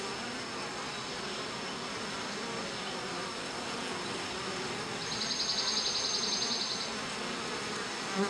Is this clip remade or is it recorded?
recorded